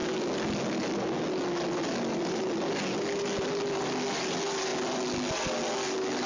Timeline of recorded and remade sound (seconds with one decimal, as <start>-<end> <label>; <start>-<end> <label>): 0.0-6.3 recorded